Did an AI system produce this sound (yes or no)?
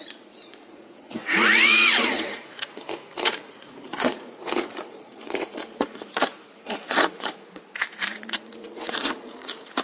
yes